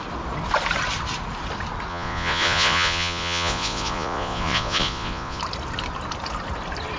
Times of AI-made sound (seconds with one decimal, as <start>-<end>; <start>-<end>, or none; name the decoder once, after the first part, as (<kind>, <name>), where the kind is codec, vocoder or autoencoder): 1.9-5.4 (vocoder, Vocos)